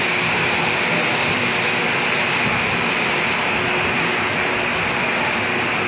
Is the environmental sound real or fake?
real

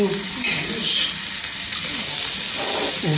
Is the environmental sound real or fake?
real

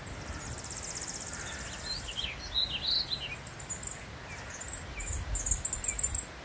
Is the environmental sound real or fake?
real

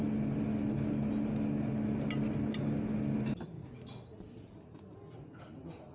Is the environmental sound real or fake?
real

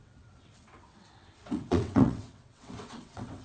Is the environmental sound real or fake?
fake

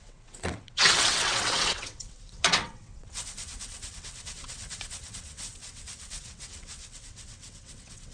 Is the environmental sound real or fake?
fake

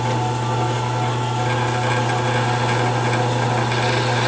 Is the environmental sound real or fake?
real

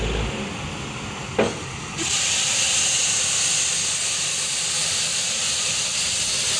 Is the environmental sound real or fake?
real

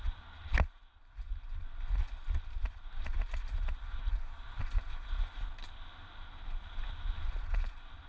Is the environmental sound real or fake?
real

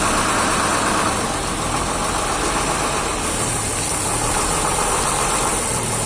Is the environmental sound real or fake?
real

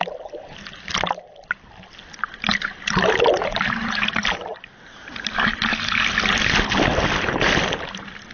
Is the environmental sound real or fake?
real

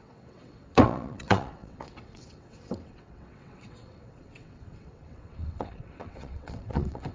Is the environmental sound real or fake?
fake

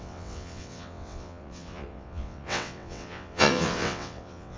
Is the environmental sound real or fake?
fake